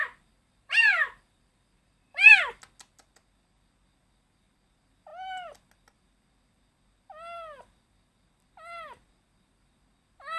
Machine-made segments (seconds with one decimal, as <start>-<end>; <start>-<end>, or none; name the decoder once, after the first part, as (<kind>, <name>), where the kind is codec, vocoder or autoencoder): 0.0-2.4 (vocoder, BigVGAN v2)